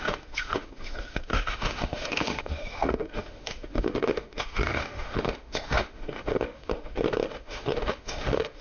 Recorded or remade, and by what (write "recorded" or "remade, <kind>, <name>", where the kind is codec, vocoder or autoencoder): remade, autoencoder, DAC-VAE